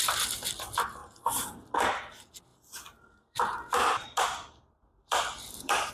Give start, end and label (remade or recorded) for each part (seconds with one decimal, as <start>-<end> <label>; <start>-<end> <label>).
0.0-1.0 recorded; 1.0-1.7 remade; 1.7-2.5 recorded; 2.5-5.9 remade